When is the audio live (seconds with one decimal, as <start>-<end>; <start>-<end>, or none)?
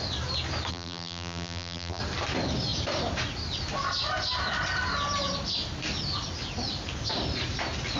0.0-0.7; 2.0-8.0